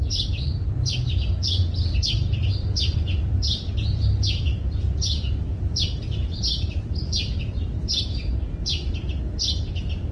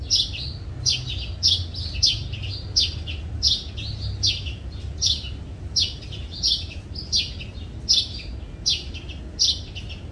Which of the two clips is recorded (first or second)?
second